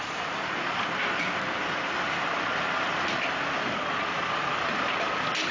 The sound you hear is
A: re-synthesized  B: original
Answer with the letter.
A